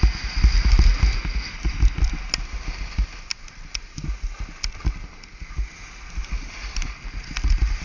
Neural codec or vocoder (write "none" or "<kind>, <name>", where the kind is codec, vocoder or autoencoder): none